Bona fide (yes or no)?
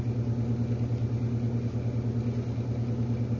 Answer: yes